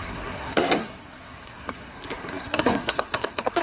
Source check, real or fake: fake